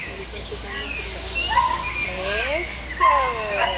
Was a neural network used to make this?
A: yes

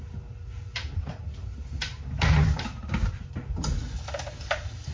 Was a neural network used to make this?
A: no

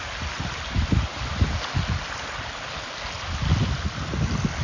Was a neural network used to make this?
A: no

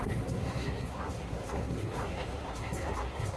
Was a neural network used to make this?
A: yes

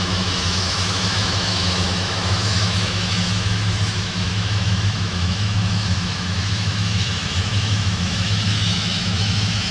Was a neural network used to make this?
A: yes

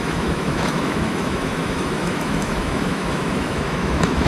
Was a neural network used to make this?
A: yes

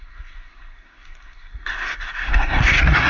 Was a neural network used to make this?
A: yes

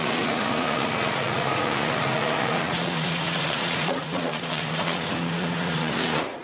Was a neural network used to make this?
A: yes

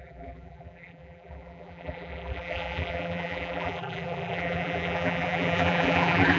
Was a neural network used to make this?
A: yes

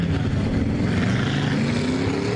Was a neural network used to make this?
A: no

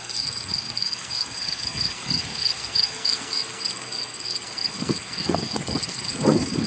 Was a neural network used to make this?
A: yes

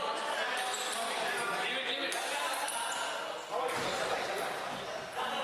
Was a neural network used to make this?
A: no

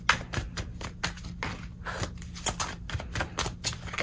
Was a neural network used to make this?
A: no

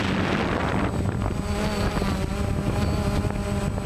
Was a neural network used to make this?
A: no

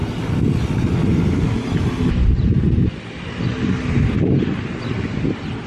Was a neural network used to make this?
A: no